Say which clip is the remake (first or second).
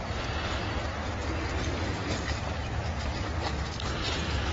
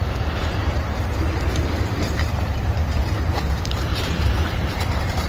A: second